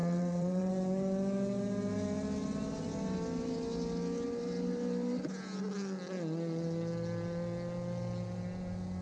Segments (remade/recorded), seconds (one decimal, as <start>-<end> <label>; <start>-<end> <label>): 0.0-0.7 remade; 0.7-9.0 recorded